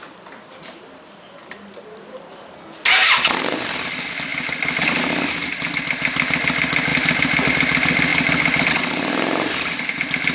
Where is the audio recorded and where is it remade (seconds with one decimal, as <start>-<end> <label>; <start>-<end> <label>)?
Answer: 0.0-6.9 recorded; 6.9-7.5 remade; 7.5-10.3 recorded